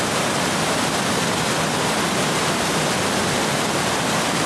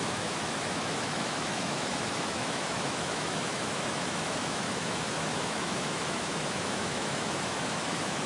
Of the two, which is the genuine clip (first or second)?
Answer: first